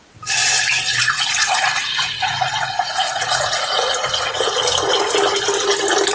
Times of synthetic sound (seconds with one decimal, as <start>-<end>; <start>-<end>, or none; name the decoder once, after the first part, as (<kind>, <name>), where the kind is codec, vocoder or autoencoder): 0.9-4.5 (vocoder, Vocos)